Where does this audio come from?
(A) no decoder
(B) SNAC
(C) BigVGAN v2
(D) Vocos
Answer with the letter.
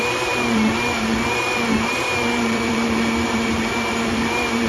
C